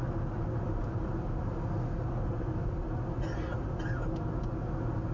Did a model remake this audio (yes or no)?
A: no